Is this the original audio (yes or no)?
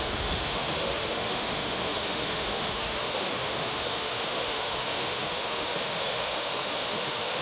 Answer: no